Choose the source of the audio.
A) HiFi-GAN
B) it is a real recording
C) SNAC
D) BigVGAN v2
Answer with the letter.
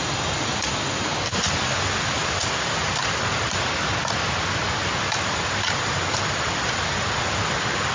B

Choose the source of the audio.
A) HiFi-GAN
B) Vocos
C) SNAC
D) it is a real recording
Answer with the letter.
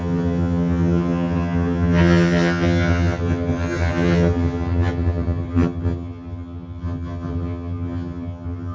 A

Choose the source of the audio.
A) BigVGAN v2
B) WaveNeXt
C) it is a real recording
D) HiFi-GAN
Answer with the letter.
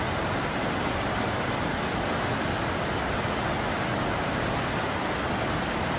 C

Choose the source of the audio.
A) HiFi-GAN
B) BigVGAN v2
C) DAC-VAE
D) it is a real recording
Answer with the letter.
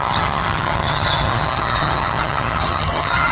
A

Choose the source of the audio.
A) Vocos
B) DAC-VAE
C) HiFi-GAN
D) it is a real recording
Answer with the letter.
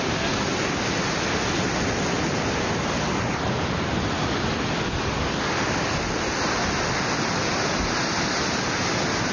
D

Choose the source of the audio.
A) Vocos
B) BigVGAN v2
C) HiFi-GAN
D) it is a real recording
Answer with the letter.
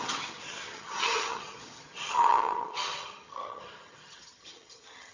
C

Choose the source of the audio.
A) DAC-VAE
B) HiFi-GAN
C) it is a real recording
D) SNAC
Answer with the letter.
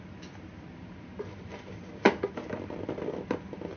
C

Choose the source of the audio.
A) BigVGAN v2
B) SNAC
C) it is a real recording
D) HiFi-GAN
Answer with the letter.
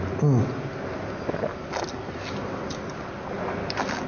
C